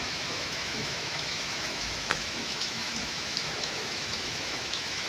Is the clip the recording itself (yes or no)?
no